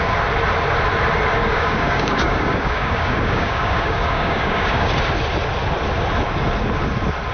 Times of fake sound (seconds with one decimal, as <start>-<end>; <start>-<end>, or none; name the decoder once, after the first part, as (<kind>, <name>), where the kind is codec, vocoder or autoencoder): 1.4-4.9 (codec, DAC)